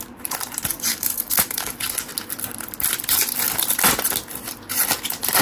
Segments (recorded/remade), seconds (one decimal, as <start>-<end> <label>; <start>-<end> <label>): 0.0-0.9 recorded; 0.9-1.7 remade; 1.7-5.4 recorded